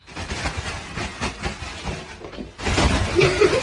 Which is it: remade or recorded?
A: recorded